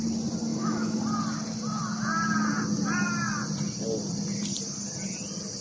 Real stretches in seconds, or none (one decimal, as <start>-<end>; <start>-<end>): 0.0-0.5; 1.0-5.6